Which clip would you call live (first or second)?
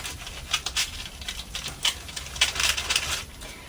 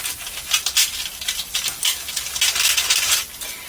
second